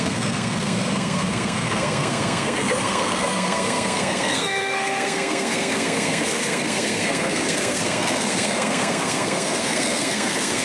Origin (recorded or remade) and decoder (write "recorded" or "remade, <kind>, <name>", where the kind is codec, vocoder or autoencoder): remade, codec, SNAC